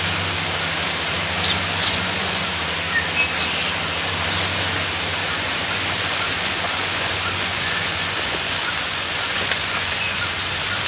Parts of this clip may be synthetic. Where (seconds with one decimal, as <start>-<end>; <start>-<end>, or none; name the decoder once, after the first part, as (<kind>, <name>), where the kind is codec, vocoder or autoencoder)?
1.8-2.5 (vocoder, Vocos); 5.2-10.3